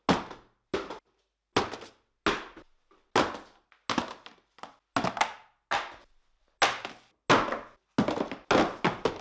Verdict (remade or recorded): recorded